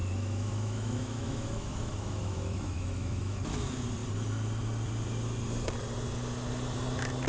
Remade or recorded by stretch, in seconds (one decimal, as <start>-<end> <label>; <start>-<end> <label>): 0.0-3.4 remade; 3.4-7.3 recorded